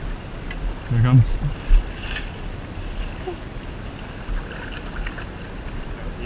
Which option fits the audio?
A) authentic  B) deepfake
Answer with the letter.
A